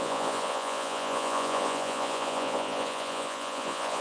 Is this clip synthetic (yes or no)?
yes